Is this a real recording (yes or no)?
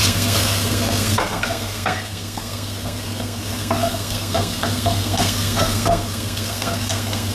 no